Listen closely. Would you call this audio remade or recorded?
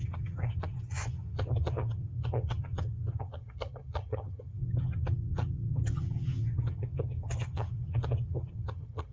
remade